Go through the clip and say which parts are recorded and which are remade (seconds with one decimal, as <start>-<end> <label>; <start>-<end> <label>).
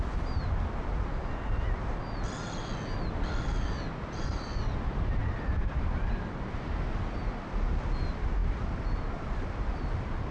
0.0-10.3 recorded